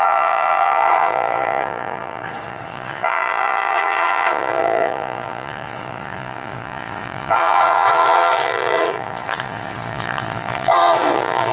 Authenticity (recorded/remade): remade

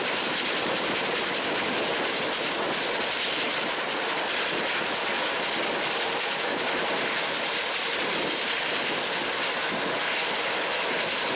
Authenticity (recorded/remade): recorded